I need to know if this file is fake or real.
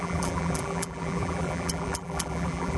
fake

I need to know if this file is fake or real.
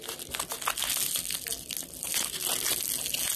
real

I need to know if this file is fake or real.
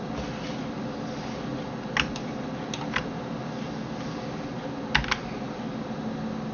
real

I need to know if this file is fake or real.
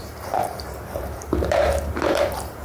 fake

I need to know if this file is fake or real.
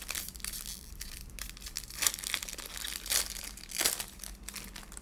real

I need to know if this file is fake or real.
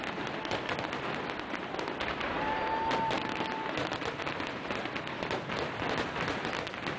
real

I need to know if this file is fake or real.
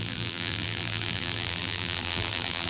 fake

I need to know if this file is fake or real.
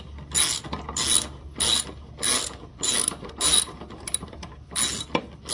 real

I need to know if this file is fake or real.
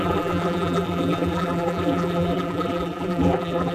fake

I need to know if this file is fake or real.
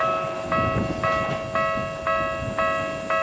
real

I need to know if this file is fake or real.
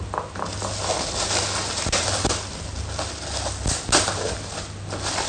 real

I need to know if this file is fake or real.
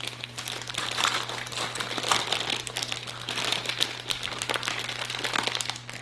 real